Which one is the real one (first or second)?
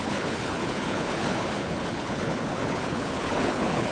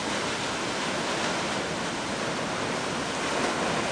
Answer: second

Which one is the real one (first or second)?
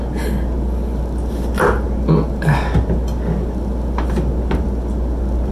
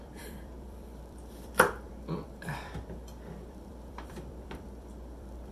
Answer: first